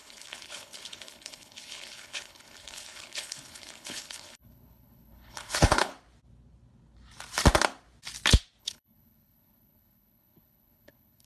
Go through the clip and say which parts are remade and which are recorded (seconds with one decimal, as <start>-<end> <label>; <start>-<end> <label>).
0.0-5.9 remade; 5.9-8.6 recorded; 8.6-11.3 remade